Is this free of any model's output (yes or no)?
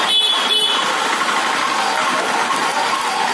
yes